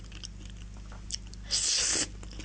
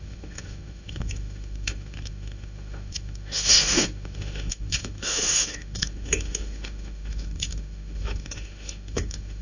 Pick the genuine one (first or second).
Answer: first